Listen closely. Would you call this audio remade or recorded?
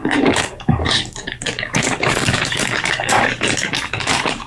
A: remade